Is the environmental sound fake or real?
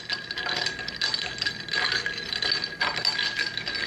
real